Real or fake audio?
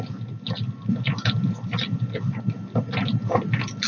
real